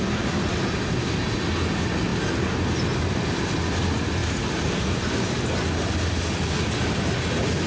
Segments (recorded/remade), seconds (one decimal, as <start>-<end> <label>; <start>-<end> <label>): 0.0-4.2 recorded; 4.2-5.3 remade; 5.3-7.7 recorded